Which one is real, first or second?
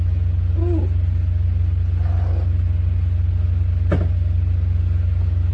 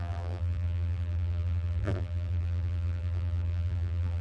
first